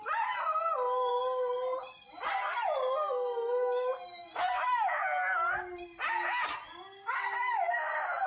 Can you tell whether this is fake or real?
real